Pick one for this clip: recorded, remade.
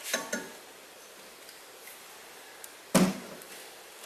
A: recorded